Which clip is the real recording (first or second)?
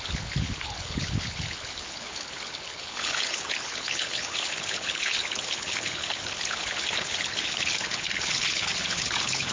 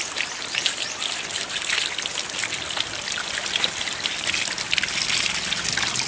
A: second